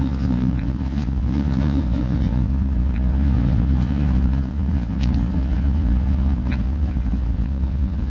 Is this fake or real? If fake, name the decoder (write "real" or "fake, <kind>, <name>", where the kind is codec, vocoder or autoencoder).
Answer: fake, vocoder, Vocos